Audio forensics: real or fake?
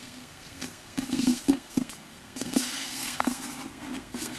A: fake